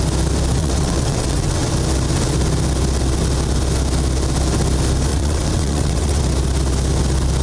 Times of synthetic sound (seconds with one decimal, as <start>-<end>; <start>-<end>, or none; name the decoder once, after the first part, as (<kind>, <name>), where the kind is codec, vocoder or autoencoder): 0.6-1.7 (vocoder, WaveNeXt); 5.1-6.2